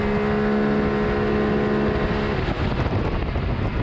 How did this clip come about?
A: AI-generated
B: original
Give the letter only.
B